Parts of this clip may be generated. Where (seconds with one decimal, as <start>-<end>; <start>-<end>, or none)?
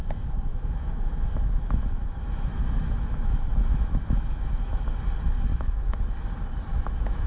0.5-4.8; 5.5-6.0; 6.7-7.3